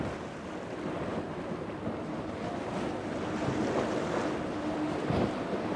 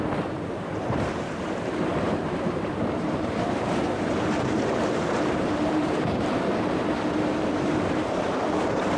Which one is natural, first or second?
first